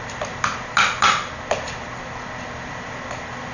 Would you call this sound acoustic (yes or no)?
yes